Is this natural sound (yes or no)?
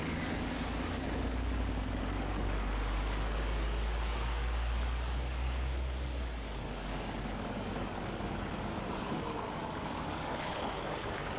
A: no